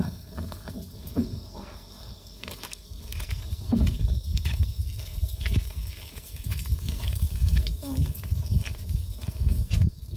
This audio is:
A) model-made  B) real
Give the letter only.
A